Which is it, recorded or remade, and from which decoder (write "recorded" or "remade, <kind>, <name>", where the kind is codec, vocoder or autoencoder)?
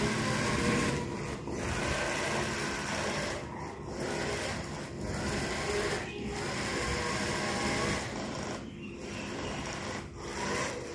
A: recorded